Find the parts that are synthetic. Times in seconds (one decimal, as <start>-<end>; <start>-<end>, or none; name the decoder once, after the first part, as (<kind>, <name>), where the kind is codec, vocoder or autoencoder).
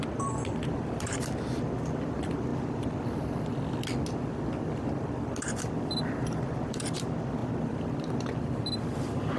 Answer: 0.0-2.5 (vocoder, BigVGAN v2); 3.2-9.4